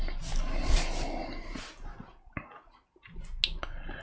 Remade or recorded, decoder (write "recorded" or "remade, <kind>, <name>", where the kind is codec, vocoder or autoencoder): recorded